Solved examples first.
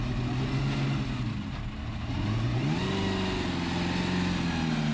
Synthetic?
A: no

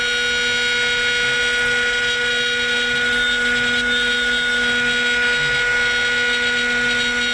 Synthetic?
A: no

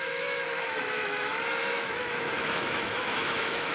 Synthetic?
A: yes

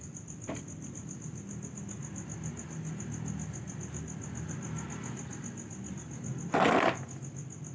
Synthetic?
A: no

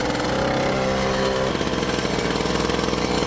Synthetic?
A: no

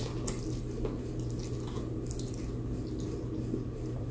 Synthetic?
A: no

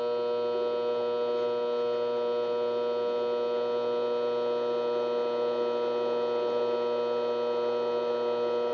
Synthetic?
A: no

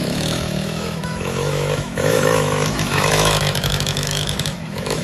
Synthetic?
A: yes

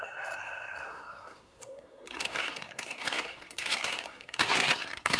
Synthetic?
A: yes